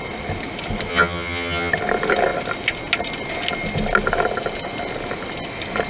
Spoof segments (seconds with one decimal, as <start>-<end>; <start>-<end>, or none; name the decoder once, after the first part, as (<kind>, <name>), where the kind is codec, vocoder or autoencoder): 0.9-1.7 (vocoder, HiFi-GAN)

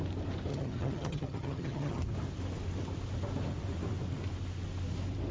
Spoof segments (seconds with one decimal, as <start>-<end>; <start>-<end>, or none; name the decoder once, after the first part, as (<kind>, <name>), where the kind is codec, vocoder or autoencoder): 0.5-2.0 (vocoder, HiFi-GAN)

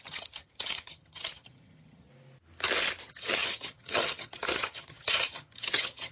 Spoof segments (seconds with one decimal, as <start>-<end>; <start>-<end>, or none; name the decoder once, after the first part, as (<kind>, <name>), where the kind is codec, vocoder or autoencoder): 0.0-2.1 (vocoder, HiFi-GAN); 3.0-6.1